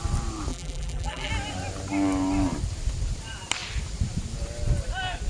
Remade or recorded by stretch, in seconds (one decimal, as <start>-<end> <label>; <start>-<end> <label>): 0.0-0.5 recorded; 0.5-1.3 remade; 1.3-5.3 recorded

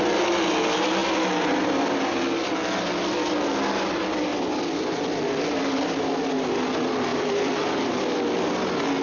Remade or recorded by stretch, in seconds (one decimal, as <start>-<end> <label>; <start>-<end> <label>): 0.0-4.3 recorded; 4.3-6.1 remade; 6.1-7.1 recorded; 7.1-7.9 remade; 7.9-9.0 recorded